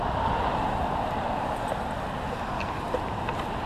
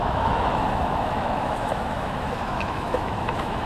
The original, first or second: first